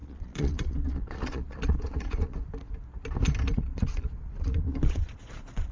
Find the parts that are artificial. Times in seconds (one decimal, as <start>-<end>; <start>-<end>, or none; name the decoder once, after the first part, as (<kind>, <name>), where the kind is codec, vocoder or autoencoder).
0.0-2.4 (vocoder, Vocos); 3.5-5.7